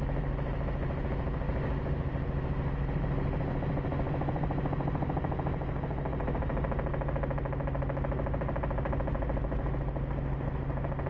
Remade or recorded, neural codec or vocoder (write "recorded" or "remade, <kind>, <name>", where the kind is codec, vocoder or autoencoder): recorded